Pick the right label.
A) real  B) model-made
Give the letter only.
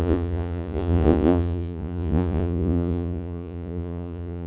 B